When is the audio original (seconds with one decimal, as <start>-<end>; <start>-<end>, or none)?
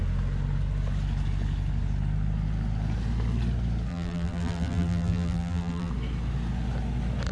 0.0-3.9; 5.9-7.3